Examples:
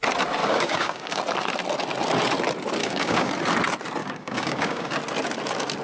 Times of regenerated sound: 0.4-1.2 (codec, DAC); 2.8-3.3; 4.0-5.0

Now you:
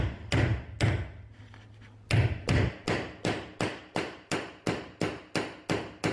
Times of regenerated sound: none

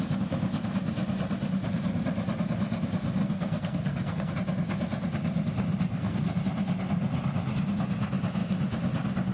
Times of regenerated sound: 3.2-4.3 (codec, SNAC); 5.9-6.4

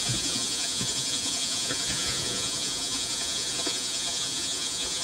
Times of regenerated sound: 0.0-5.0 (vocoder, Vocos)

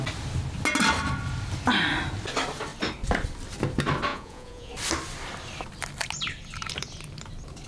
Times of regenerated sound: 4.1-4.7 (vocoder, Vocos)

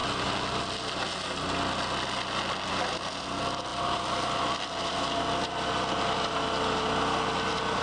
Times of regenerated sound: 3.7-6.0 (vocoder, BigVGAN v2)